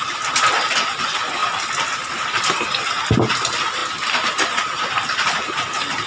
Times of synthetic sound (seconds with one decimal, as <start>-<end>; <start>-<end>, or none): none